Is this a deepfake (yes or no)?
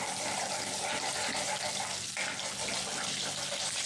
no